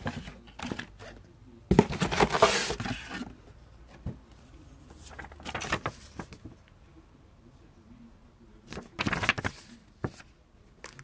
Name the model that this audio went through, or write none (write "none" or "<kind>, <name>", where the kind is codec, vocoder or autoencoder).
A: none